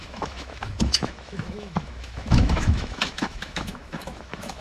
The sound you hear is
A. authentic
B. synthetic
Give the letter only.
B